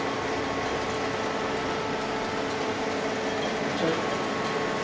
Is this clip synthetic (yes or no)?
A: no